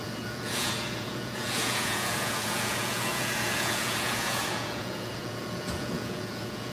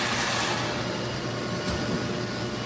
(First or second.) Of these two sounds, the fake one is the first